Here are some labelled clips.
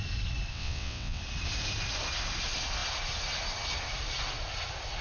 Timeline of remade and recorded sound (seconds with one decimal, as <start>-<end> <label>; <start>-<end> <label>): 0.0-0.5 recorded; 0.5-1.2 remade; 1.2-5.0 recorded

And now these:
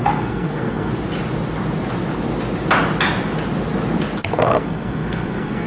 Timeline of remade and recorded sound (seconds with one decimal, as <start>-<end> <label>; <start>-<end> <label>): 0.0-0.9 remade; 0.9-4.3 recorded; 4.3-5.7 remade

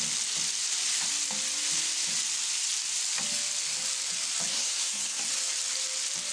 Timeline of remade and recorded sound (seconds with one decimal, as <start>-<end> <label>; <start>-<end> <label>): 0.0-4.5 recorded; 4.5-5.2 remade; 5.2-6.3 recorded

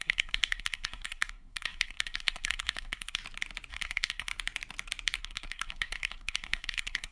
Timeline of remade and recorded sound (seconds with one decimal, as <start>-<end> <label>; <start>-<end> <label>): 0.0-3.2 remade; 3.2-3.7 recorded; 3.7-4.3 remade; 4.3-5.2 recorded; 5.2-7.1 remade

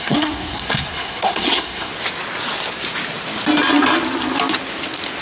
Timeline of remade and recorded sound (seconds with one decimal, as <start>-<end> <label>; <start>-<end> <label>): 0.0-1.9 remade; 1.9-5.2 recorded

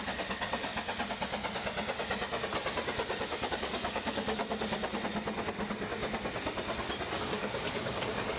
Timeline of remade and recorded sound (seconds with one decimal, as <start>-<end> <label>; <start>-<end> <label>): 0.0-0.7 remade; 0.7-3.5 recorded; 3.5-4.4 remade; 4.4-7.2 recorded; 7.2-8.4 remade

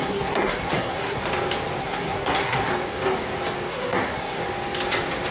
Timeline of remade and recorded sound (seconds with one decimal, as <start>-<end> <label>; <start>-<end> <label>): 0.0-1.2 remade; 1.2-1.8 recorded; 1.8-2.7 remade; 2.7-3.7 recorded; 3.7-4.4 remade; 4.4-5.3 recorded